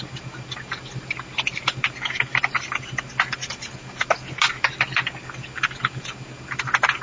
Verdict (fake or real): real